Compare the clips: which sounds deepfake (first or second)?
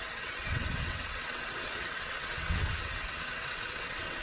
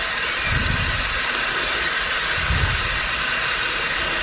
first